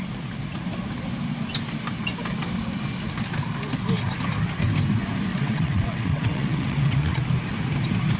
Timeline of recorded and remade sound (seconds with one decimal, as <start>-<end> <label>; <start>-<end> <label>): 0.0-5.3 recorded; 5.3-7.3 remade; 7.3-8.2 recorded